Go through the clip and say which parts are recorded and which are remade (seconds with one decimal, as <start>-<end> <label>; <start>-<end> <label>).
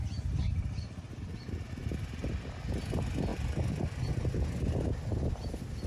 0.0-5.9 recorded